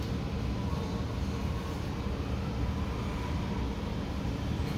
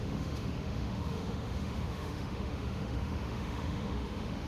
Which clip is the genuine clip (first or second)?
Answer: first